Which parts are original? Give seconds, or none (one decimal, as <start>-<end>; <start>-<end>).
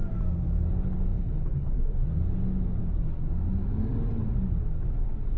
0.0-1.1; 1.8-5.4